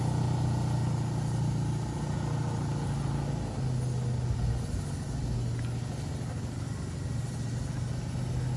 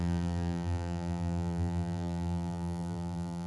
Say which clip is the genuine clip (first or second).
first